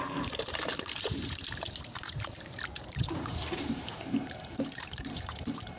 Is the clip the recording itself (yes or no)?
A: no